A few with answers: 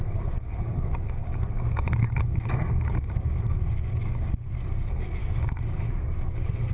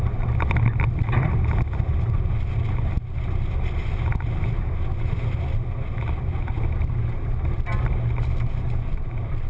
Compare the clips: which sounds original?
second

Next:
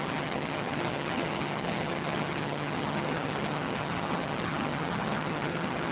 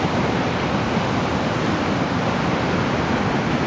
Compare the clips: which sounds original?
second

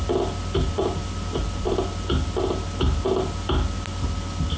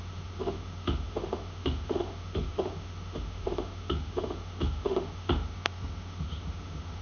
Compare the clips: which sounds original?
first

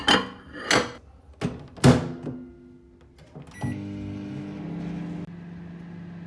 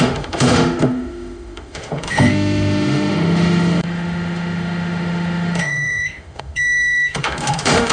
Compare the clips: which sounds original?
first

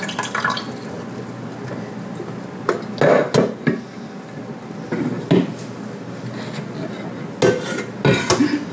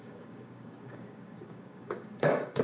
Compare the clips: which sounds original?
first